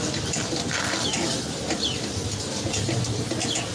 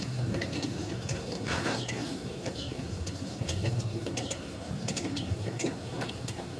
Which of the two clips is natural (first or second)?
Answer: first